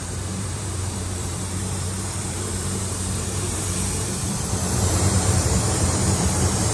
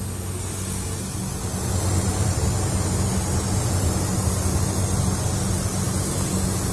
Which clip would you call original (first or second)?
second